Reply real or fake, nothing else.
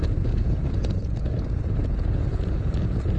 fake